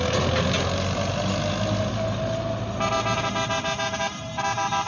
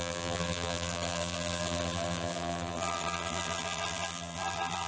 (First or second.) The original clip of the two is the first